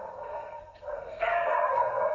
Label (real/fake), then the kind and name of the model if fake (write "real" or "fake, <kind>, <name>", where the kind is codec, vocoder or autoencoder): fake, codec, SNAC